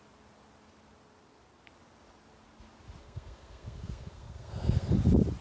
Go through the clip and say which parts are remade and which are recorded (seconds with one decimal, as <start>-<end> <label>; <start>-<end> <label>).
0.0-3.0 recorded; 3.0-4.9 remade; 4.9-5.4 recorded